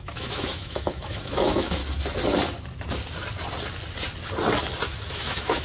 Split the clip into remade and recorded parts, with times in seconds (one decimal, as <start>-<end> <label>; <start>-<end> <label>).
0.0-1.8 remade; 1.8-5.1 recorded; 5.1-5.6 remade